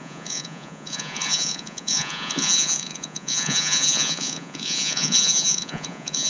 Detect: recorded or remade remade